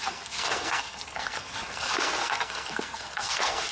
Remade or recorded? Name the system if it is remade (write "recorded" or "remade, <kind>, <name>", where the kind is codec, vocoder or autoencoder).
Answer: remade, codec, SNAC